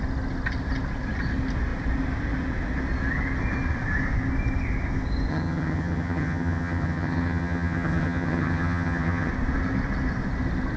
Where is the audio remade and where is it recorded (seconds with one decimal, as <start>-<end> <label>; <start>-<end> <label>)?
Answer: 0.0-5.3 recorded; 5.3-9.3 remade; 9.3-10.8 recorded